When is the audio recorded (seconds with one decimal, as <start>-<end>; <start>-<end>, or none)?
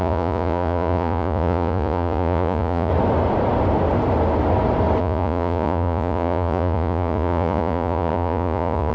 2.9-5.0